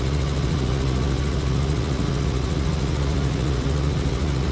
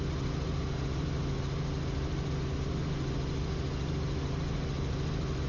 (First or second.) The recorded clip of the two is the second